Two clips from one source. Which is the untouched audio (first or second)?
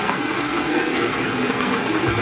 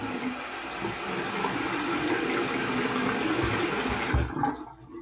second